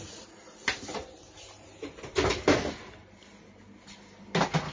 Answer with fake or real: real